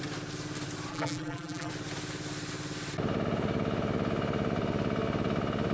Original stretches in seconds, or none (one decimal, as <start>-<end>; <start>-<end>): 0.0-0.9; 1.7-5.7